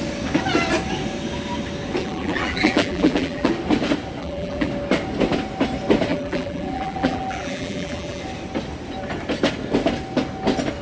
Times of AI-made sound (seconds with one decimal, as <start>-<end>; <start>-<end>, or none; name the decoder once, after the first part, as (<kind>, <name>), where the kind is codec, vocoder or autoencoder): 2.0-3.5 (vocoder, BigVGAN v2); 4.2-4.7; 6.1-8.2